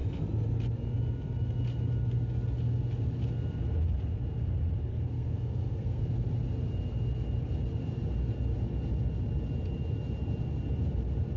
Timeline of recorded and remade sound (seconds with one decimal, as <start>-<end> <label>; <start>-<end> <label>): 0.0-4.9 recorded; 4.9-6.0 remade; 6.0-11.4 recorded